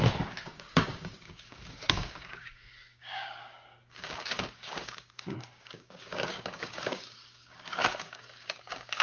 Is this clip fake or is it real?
fake